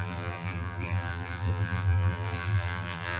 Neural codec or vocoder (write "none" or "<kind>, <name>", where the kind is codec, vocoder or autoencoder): vocoder, BigVGAN v2